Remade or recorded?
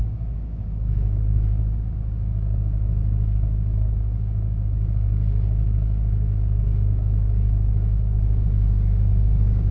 remade